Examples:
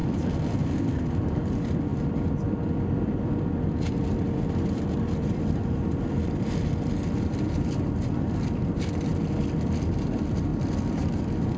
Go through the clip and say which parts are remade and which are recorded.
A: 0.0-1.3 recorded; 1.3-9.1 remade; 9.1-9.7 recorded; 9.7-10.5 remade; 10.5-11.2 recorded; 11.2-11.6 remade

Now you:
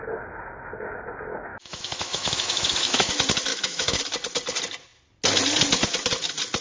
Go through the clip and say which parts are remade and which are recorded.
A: 0.0-1.5 recorded; 1.5-3.1 remade; 3.1-3.5 recorded; 3.5-4.0 remade; 4.0-6.6 recorded

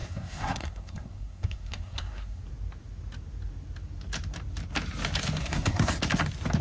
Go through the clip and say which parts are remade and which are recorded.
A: 0.0-2.4 remade; 2.4-5.4 recorded; 5.4-5.9 remade; 5.9-6.6 recorded

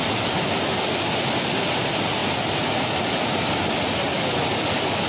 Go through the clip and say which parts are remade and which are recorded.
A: 0.0-5.1 recorded

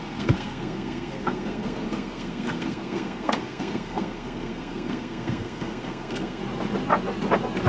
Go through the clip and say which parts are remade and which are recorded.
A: 0.0-6.4 remade; 6.4-7.7 recorded

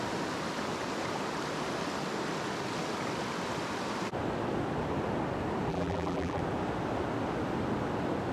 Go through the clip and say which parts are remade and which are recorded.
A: 0.0-5.7 recorded; 5.7-6.4 remade; 6.4-8.3 recorded

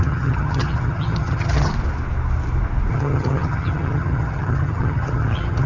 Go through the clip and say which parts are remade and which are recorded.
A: 0.0-1.7 remade; 1.7-2.9 recorded; 2.9-5.7 remade